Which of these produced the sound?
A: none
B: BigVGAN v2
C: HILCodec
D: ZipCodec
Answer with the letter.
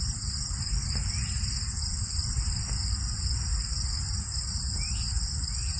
B